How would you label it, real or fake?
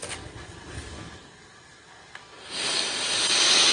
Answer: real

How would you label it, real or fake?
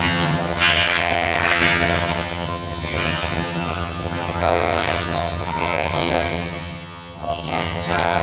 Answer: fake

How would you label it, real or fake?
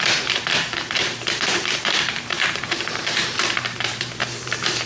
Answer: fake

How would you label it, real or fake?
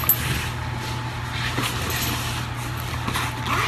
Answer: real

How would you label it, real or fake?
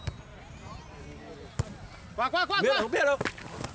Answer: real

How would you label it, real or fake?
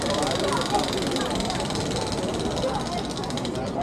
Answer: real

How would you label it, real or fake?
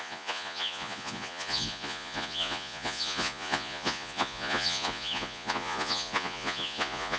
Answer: fake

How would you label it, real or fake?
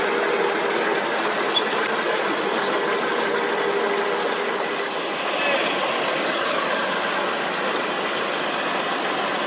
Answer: real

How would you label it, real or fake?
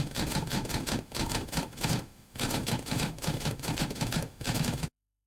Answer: fake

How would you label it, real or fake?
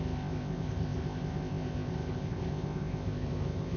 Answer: fake